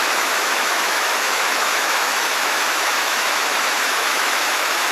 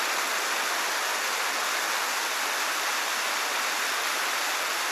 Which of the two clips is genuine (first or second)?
second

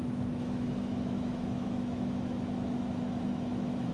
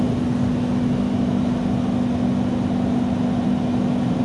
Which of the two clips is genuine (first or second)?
second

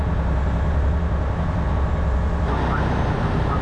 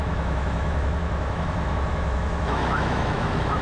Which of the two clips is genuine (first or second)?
first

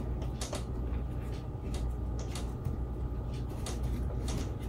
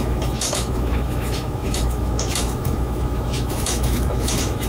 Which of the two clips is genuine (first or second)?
first